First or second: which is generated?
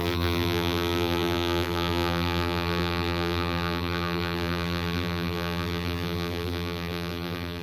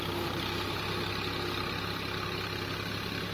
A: first